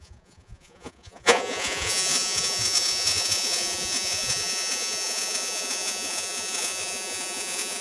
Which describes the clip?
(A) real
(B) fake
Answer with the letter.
B